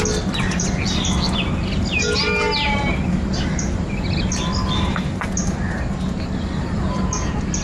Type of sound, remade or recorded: recorded